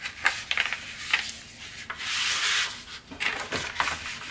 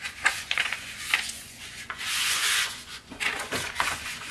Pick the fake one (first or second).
second